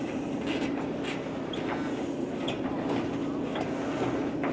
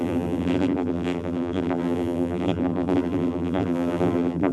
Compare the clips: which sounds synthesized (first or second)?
second